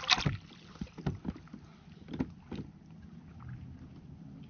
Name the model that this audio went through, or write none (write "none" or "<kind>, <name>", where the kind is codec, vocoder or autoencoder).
none